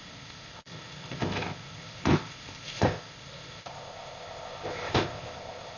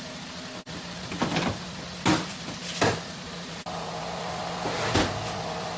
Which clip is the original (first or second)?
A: second